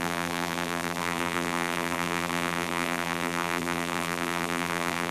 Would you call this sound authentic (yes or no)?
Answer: no